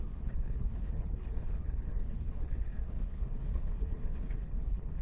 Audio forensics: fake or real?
fake